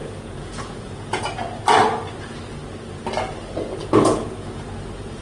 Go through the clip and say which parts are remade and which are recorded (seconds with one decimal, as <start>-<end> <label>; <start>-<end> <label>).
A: 0.0-1.2 remade; 1.2-3.8 recorded; 3.8-4.6 remade; 4.6-5.2 recorded